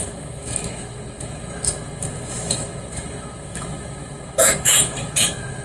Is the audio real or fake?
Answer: fake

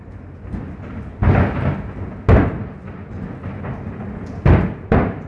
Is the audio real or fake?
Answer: real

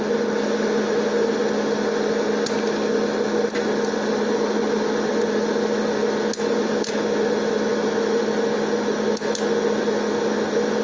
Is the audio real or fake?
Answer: real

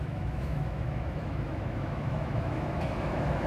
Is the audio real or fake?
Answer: fake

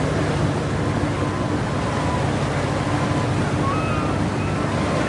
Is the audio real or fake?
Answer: real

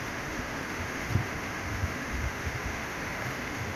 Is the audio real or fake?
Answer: fake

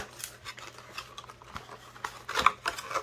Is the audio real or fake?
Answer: real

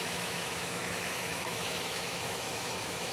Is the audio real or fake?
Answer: fake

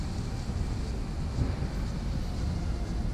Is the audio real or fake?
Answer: real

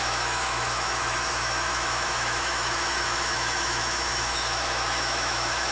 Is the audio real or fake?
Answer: fake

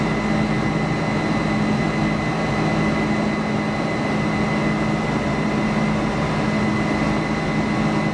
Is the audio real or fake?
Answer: real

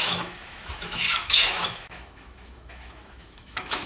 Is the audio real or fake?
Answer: fake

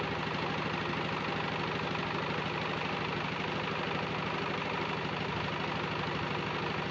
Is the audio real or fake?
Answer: real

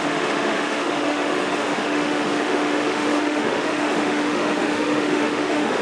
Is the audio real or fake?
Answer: fake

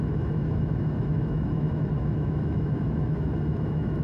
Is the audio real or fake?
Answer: fake